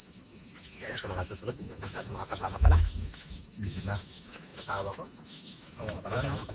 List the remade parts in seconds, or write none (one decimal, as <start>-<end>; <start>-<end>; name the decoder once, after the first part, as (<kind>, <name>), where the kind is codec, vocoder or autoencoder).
0.0-6.5 (autoencoder, DAC-VAE)